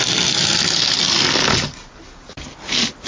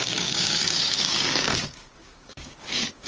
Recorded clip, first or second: first